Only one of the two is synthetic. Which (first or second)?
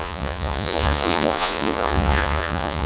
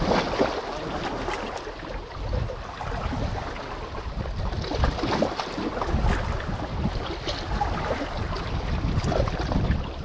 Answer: first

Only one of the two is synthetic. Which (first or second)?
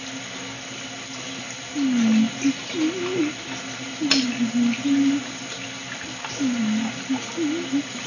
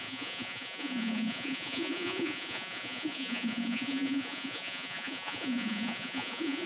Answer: second